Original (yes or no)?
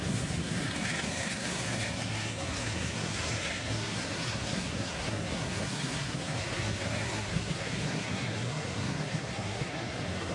no